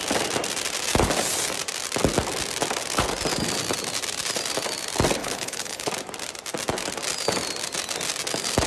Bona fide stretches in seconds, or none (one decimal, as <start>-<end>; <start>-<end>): 0.0-5.2; 5.9-8.7